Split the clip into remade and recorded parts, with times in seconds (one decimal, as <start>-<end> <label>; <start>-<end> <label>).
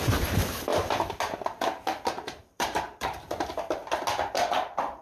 0.0-0.7 remade; 0.7-2.5 recorded; 2.5-3.8 remade; 3.8-5.0 recorded